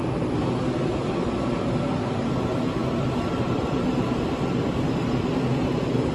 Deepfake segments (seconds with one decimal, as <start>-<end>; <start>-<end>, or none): none